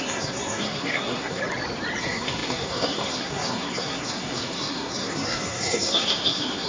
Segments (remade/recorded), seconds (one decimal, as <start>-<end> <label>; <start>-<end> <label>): 0.0-1.4 remade; 1.4-2.0 recorded; 2.0-6.7 remade